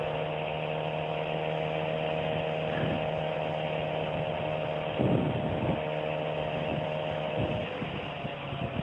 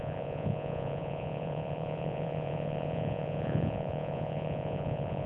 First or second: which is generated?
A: second